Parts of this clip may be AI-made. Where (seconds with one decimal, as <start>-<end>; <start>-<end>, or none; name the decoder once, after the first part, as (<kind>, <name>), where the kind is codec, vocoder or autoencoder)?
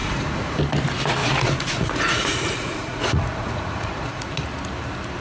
0.0-0.6 (vocoder, Vocos); 1.2-4.3